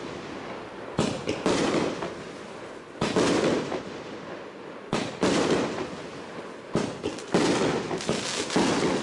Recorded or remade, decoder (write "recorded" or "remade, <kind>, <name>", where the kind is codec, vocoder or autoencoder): recorded